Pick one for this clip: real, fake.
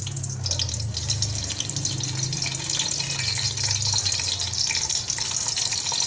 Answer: real